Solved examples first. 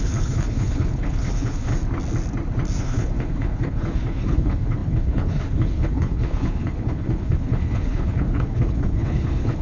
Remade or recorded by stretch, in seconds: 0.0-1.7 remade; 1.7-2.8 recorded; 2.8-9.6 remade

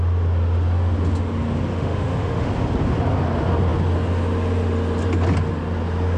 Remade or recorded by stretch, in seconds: 0.0-1.7 recorded; 1.7-2.5 remade; 2.5-6.2 recorded

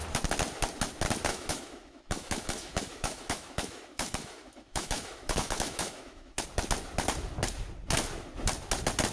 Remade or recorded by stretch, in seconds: 0.0-1.3 recorded; 1.3-6.4 remade; 6.4-9.1 recorded

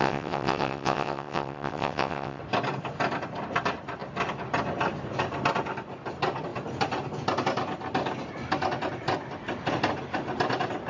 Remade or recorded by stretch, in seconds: 0.0-2.4 remade; 2.4-10.9 recorded

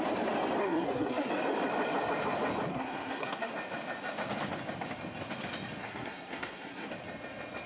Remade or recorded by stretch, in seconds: 0.0-0.6 recorded; 0.6-1.3 remade; 1.3-2.7 recorded; 2.7-3.5 remade; 3.5-5.8 recorded; 5.8-6.9 remade; 6.9-7.7 recorded